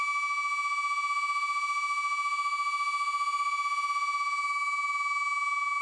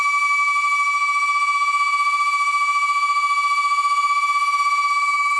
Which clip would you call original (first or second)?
first